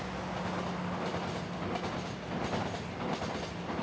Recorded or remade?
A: recorded